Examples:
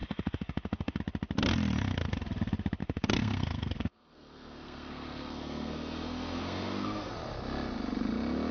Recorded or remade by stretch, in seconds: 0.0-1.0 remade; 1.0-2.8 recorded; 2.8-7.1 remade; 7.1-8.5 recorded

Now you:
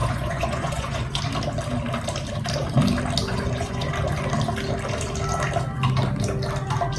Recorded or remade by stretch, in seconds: 0.0-1.2 remade; 1.2-3.3 recorded; 3.3-3.9 remade; 3.9-7.0 recorded

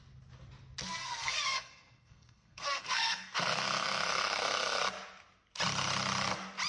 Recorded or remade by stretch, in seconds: 0.0-1.0 recorded; 1.0-4.8 remade; 4.8-6.7 recorded

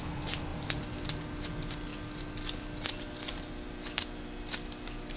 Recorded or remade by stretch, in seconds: 0.0-5.2 recorded

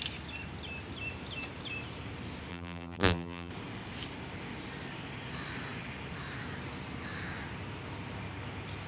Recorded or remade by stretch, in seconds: 0.0-2.5 recorded; 2.5-3.5 remade; 3.5-8.9 recorded

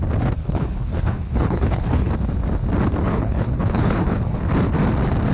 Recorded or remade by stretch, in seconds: 0.0-0.4 recorded; 0.4-2.1 remade; 2.1-3.0 recorded; 3.0-4.4 remade; 4.4-5.3 recorded

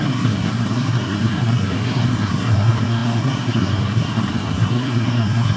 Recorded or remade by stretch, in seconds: 0.0-5.6 remade